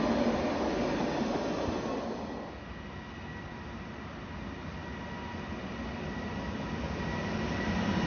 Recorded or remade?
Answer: recorded